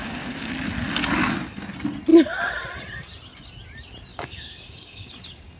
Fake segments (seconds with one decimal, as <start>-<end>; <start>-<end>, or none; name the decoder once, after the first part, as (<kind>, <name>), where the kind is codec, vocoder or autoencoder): 0.0-0.5 (codec, DAC); 4.1-5.1

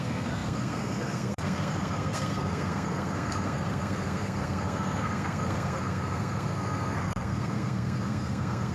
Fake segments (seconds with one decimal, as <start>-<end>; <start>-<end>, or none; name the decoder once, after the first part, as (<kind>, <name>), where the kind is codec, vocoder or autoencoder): 0.0-8.7 (codec, SNAC)